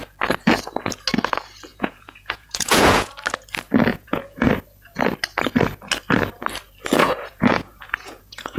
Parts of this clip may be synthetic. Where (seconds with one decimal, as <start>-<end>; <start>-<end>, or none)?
1.7-3.1; 3.9-4.5; 7.0-8.6